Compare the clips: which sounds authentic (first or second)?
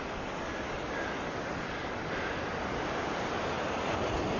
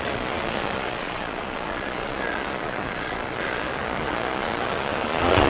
first